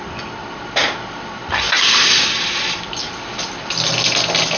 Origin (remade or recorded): recorded